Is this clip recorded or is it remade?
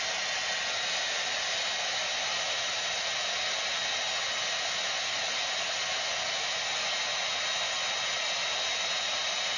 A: recorded